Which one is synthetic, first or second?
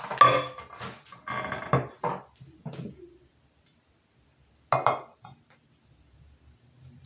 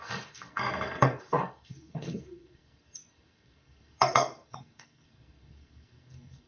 second